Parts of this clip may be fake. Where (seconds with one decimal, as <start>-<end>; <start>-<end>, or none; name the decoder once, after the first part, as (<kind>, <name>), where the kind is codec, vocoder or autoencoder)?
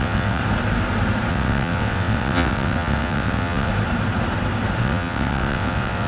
0.0-0.4 (vocoder, WaveNeXt); 1.3-3.7; 4.8-6.1